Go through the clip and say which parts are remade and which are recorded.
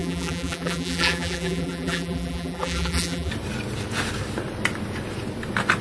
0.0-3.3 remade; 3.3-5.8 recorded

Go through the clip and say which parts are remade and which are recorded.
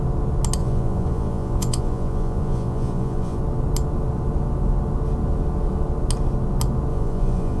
0.0-0.6 recorded; 0.6-3.4 remade; 3.4-6.9 recorded; 6.9-7.6 remade